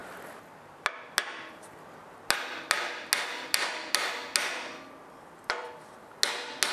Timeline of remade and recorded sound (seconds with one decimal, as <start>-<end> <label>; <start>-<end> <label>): 0.0-6.7 recorded